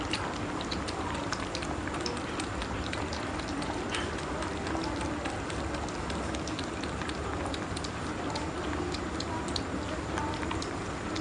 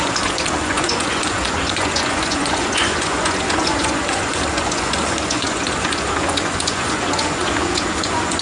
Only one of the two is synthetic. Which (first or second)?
second